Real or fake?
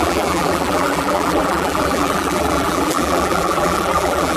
fake